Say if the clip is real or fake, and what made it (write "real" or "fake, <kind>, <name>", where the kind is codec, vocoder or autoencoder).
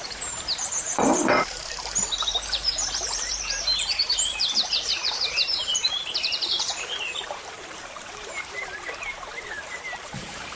fake, vocoder, BigVGAN v2